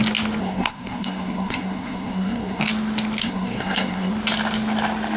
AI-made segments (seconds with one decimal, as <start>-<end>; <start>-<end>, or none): 0.4-2.6; 3.2-4.1